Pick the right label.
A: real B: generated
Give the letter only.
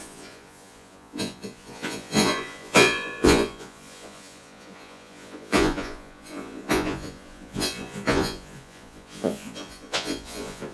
B